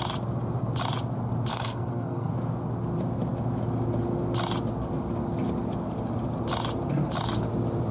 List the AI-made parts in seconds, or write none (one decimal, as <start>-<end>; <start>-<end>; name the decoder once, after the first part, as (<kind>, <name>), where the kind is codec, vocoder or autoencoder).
1.5-2.3 (codec, SNAC)